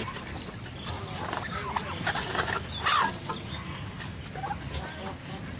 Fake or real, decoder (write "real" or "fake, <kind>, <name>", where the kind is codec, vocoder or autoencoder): real